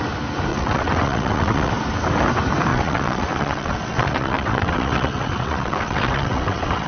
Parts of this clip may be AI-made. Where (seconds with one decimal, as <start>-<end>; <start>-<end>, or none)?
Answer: 0.5-1.7; 2.7-6.9